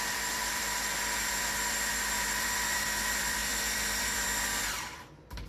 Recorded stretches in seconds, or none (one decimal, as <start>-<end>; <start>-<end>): none